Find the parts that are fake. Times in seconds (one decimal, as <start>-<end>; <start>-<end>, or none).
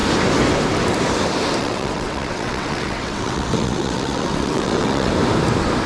1.6-5.1